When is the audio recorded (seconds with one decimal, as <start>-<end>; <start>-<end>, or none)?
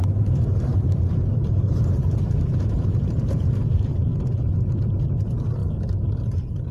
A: 4.1-4.7; 5.6-6.1